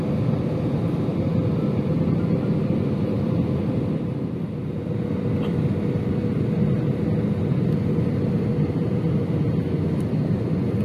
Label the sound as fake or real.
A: real